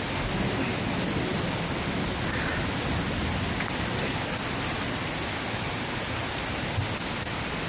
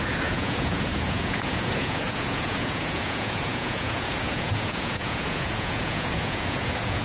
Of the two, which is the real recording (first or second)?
first